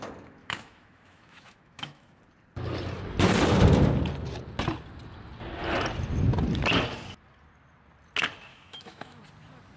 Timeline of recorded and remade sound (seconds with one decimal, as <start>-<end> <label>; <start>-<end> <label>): 0.0-0.4 recorded; 0.4-2.2 remade; 2.2-8.5 recorded; 8.5-9.2 remade; 9.2-9.8 recorded